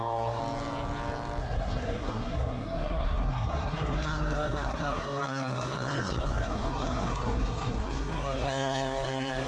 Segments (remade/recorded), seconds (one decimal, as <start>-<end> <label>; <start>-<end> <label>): 0.0-0.4 remade; 0.4-1.4 recorded; 1.4-9.5 remade